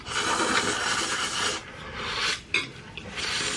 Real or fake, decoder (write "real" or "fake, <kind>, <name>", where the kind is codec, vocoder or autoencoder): fake, vocoder, BigVGAN v2